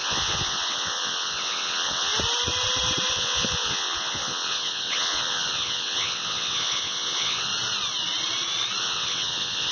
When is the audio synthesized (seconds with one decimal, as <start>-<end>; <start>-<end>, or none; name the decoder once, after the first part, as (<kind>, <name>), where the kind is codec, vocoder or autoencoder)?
0.0-2.1 (vocoder, WaveNeXt); 3.1-7.5; 8.8-9.7